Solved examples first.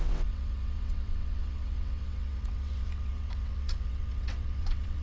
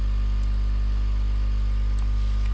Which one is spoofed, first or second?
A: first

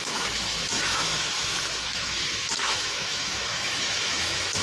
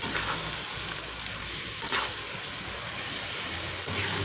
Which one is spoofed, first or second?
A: first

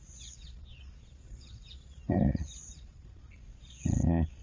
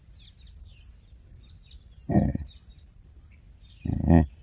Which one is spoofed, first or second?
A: first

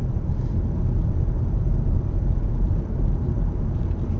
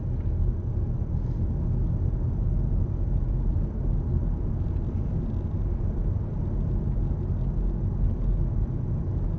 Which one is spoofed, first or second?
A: first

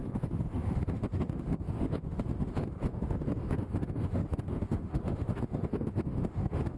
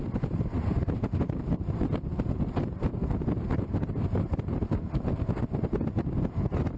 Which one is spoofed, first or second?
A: first